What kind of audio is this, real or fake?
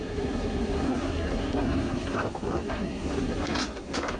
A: fake